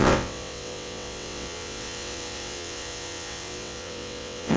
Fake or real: fake